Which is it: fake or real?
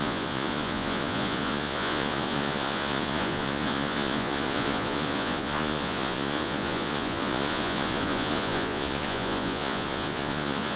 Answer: fake